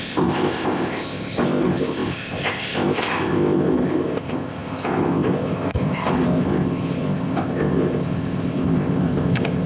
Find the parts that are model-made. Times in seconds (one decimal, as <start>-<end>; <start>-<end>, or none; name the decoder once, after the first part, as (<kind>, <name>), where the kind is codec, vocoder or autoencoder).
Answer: 0.0-9.7 (codec, ZipCodec)